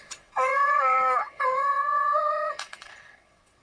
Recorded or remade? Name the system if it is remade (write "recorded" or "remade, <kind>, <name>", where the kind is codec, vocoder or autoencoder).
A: remade, vocoder, WaveNeXt